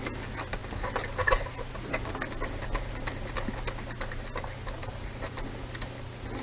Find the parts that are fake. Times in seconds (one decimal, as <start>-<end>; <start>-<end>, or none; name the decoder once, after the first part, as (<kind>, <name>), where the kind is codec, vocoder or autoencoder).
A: 4.8-5.4 (vocoder, BigVGAN v2)